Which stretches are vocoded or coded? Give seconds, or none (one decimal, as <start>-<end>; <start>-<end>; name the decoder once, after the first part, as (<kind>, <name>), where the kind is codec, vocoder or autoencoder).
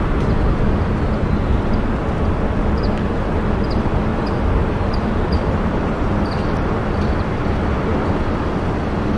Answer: 4.1-6.8 (vocoder, BigVGAN v2)